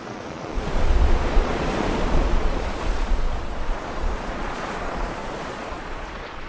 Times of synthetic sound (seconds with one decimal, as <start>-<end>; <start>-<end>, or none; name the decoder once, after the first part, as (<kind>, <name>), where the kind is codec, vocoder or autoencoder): 0.0-6.5 (vocoder, Vocos)